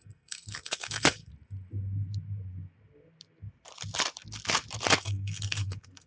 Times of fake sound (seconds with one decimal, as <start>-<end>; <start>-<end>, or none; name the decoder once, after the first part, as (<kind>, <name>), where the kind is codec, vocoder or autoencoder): 0.0-1.3 (codec, SNAC); 5.0-6.1